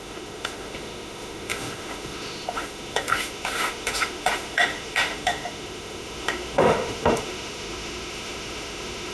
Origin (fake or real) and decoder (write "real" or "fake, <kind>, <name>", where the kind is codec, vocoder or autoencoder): fake, autoencoder, DAC-VAE